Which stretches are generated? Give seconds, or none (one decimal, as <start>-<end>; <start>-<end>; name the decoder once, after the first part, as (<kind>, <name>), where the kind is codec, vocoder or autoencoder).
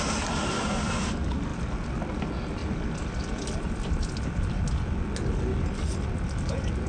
1.5-2.2 (vocoder, BigVGAN v2); 5.5-6.5